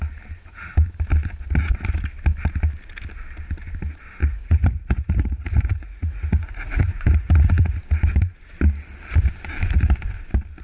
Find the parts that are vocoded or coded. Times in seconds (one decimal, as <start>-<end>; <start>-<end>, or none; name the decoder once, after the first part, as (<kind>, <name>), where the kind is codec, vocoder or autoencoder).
4.2-7.8 (vocoder, Vocos)